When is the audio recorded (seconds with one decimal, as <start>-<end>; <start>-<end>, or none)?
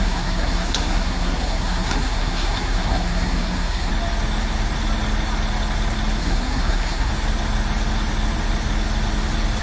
3.9-6.2; 7.1-9.6